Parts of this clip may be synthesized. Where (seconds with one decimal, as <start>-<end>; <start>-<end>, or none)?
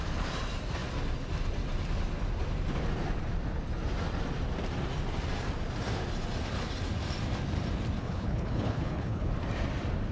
8.0-9.3